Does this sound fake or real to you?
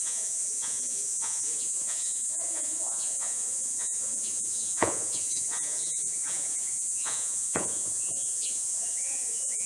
fake